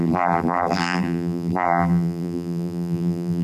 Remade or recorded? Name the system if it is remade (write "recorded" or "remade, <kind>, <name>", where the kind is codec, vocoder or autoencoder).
remade, vocoder, BigVGAN v2